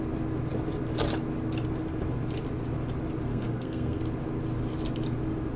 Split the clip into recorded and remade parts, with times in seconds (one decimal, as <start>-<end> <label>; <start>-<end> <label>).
0.0-3.3 recorded; 3.3-4.0 remade; 4.0-5.6 recorded